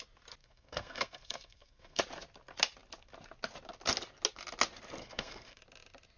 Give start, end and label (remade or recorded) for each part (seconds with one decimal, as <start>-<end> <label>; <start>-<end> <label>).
0.0-0.4 recorded; 0.4-2.0 remade; 2.0-5.0 recorded; 5.0-5.6 remade; 5.6-6.2 recorded